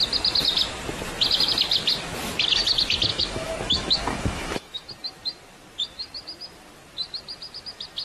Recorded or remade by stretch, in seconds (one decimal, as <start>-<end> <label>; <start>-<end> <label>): 0.0-3.1 recorded; 3.1-4.9 remade; 4.9-8.0 recorded